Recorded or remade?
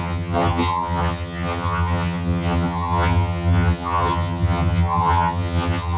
remade